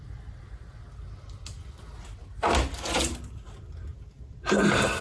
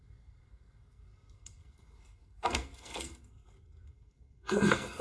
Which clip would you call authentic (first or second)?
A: first